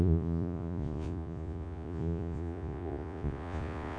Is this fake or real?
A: fake